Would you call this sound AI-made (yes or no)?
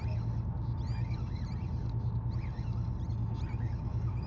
no